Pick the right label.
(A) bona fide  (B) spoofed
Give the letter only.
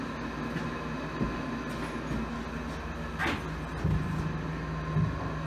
A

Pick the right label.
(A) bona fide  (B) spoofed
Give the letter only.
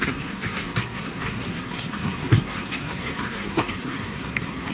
B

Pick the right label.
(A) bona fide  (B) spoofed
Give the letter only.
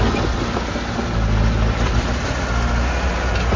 A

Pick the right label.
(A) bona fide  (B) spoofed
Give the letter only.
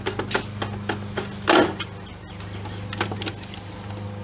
A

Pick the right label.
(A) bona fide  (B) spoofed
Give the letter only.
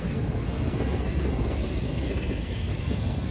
B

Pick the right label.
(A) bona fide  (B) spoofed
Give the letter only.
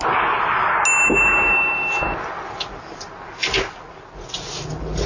A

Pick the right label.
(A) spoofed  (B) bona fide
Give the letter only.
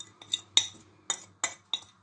B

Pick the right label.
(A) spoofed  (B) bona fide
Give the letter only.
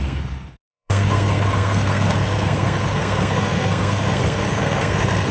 A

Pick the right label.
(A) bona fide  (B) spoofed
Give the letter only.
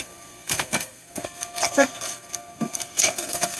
B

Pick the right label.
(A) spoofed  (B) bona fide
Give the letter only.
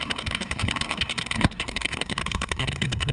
A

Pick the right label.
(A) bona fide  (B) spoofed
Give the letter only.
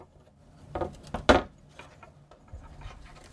A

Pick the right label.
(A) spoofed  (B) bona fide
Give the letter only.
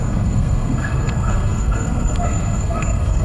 A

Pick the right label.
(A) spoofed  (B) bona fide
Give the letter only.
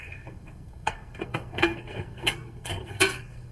A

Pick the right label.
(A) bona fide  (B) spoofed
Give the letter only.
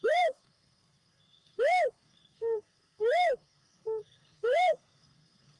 B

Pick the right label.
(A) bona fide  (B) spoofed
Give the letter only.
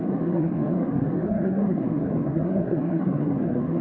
B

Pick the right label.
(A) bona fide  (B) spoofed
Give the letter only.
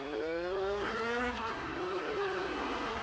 B